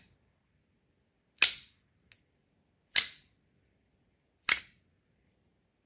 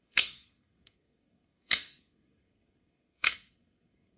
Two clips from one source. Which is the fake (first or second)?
second